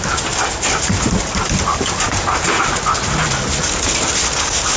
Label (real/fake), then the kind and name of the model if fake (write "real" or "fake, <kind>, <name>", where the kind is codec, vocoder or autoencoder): real